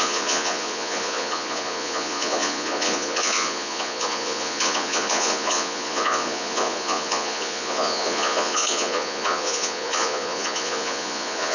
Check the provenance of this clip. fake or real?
fake